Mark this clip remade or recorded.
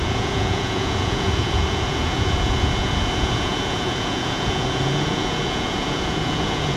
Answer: remade